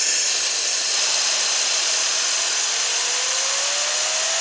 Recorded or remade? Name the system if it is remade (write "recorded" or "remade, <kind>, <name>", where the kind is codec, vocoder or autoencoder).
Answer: recorded